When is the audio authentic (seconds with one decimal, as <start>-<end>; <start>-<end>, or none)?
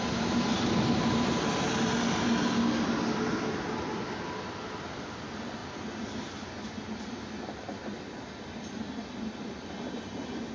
0.0-10.5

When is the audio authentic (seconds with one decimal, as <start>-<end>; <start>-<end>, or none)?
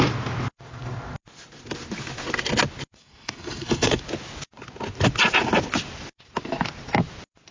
0.0-3.0; 4.0-7.5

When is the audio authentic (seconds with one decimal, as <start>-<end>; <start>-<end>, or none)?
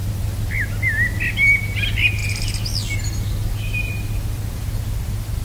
0.0-5.4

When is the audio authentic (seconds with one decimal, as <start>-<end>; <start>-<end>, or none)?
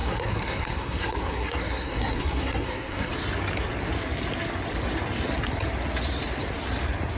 3.1-7.2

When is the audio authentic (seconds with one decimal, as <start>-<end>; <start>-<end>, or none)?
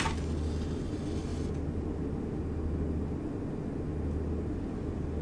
0.0-5.2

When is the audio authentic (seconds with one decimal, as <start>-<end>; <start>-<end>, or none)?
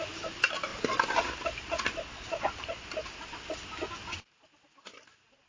0.0-5.5